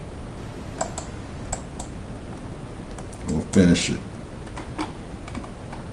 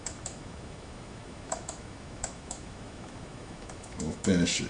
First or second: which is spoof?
second